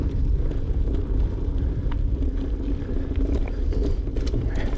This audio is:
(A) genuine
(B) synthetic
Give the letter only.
B